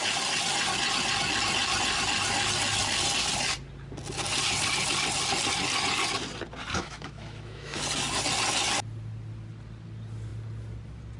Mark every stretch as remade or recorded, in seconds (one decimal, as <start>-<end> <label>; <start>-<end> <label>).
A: 0.0-6.7 recorded; 6.7-7.8 remade; 7.8-11.2 recorded